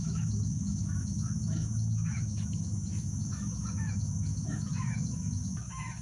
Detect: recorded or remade remade